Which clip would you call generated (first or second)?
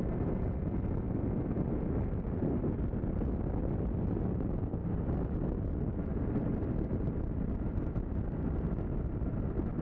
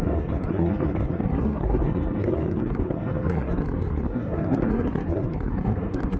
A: second